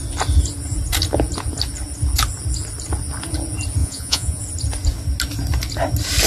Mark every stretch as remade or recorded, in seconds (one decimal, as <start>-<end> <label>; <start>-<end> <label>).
0.0-3.8 recorded; 3.8-4.4 remade; 4.4-6.3 recorded